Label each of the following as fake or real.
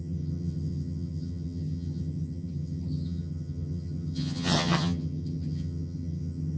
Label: fake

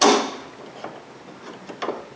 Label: real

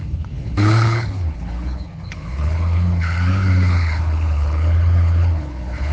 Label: fake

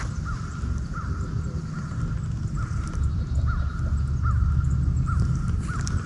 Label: real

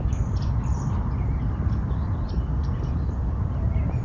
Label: real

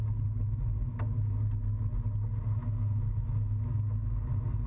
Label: real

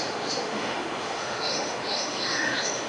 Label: fake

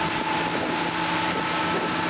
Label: real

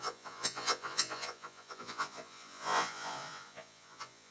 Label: fake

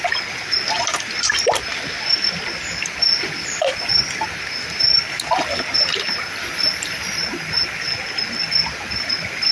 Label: real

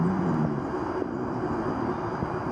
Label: real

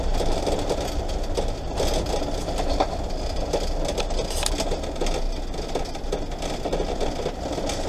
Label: real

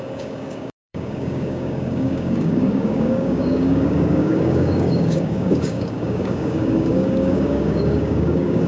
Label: fake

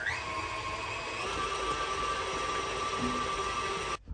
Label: real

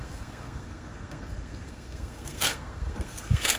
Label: fake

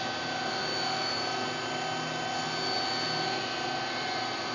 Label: real